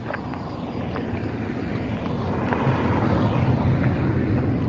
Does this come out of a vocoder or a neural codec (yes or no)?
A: no